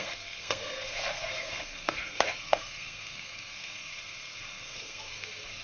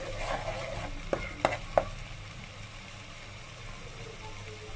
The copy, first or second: first